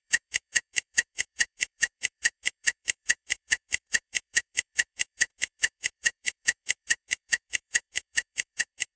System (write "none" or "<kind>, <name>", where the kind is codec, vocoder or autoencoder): autoencoder, DAC-VAE